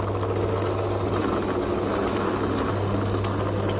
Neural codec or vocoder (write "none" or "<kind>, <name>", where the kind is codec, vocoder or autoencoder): none